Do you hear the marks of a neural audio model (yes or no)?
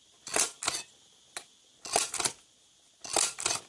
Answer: no